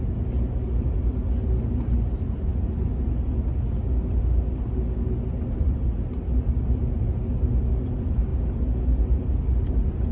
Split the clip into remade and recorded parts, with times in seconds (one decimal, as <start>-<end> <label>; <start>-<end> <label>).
0.0-10.1 recorded